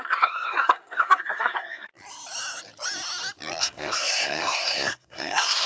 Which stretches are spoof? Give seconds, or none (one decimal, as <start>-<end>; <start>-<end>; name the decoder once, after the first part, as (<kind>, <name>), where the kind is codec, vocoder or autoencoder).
0.0-1.9 (codec, SNAC); 3.6-5.7